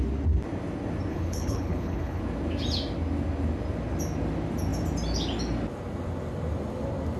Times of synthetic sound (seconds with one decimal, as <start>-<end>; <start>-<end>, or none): 1.1-2.2